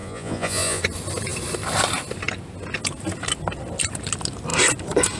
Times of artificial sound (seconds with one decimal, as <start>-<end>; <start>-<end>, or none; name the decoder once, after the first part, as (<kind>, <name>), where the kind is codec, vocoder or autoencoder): 0.0-0.8 (vocoder, Vocos)

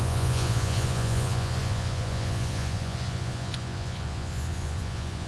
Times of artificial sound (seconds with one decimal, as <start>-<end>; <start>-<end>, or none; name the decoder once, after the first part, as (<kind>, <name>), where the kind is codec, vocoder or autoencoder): 0.0-5.3 (vocoder, Vocos)

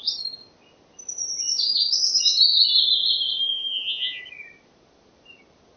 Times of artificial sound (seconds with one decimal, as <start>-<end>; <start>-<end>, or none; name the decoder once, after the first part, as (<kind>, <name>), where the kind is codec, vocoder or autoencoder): 3.5-4.2 (vocoder, Vocos)

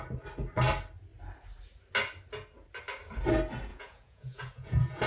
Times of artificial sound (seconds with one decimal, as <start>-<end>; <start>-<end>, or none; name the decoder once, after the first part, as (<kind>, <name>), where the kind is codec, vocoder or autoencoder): 3.7-5.1 (vocoder, Vocos)